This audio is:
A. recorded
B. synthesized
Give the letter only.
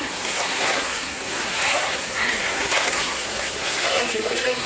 B